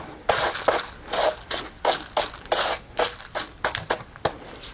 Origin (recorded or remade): recorded